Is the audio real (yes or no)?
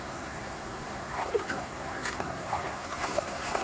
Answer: no